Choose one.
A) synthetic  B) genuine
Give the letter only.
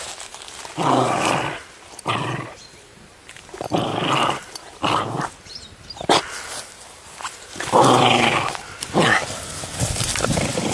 B